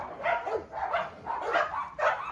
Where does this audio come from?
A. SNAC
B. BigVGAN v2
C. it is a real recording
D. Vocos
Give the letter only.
C